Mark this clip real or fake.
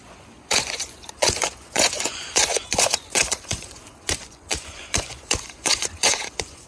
fake